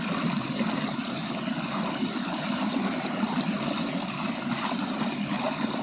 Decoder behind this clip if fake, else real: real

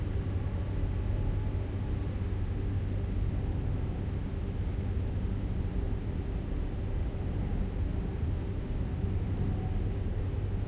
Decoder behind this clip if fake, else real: real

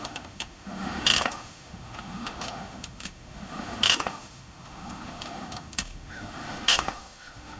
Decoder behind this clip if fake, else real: fake, autoencoder, DAC-VAE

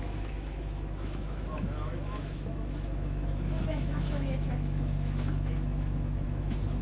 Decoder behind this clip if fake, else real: fake, autoencoder, DAC-VAE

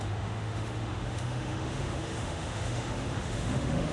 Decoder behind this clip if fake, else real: fake, autoencoder, DAC-VAE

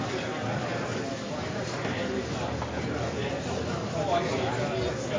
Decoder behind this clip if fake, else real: real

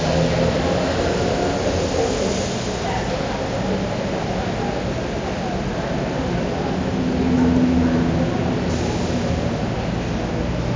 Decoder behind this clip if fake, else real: real